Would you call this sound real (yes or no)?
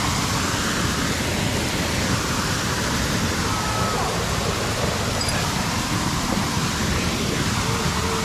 yes